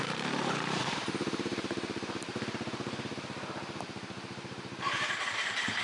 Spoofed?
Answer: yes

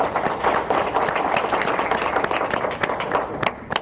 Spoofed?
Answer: no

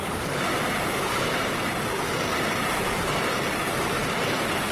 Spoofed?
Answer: yes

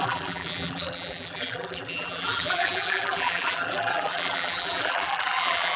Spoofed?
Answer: yes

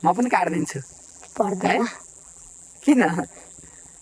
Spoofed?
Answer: yes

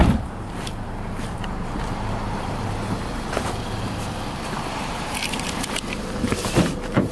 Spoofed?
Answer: yes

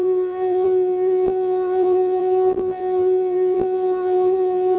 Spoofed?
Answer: yes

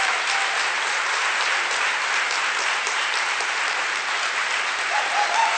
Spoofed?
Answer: yes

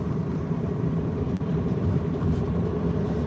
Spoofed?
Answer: yes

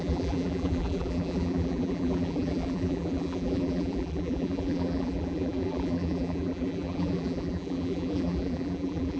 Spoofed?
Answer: yes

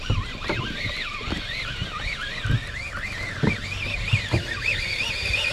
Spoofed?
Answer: no